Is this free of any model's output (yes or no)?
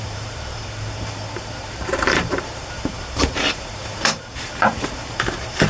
no